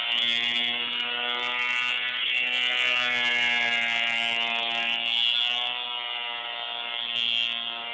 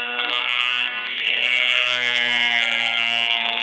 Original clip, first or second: first